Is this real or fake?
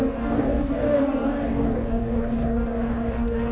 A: fake